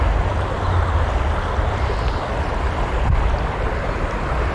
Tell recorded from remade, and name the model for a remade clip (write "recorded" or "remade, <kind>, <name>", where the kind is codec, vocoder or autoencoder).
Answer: recorded